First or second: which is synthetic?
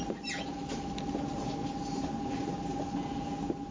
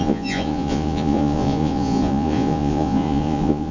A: second